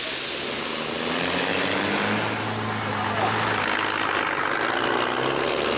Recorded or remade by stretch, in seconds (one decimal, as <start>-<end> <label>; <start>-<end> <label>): 0.0-5.8 recorded